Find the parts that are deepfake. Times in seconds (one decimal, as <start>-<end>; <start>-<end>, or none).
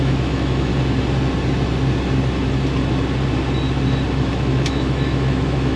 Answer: 0.0-0.7; 4.2-5.8